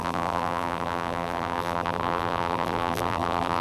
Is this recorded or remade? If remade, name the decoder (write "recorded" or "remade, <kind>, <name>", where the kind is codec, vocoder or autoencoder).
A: remade, vocoder, BigVGAN v2